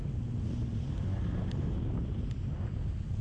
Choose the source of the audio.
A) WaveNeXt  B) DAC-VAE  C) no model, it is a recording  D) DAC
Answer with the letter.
C